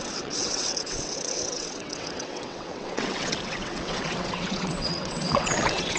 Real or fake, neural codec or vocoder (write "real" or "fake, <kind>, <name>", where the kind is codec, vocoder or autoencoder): fake, vocoder, WaveNeXt